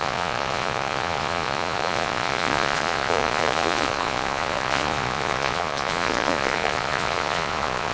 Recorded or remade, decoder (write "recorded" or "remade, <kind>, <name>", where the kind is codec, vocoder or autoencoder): remade, vocoder, Vocos